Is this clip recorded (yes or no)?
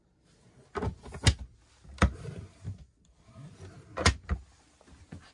yes